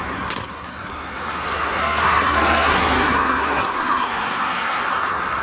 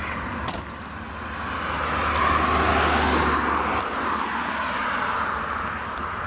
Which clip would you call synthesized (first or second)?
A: first